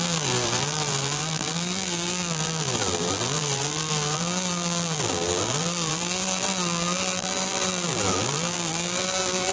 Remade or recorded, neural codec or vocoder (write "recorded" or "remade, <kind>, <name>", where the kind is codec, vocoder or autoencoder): remade, vocoder, BigVGAN v2